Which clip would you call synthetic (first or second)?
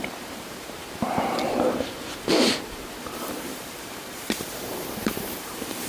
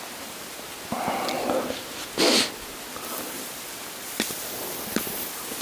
first